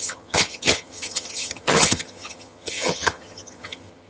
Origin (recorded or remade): remade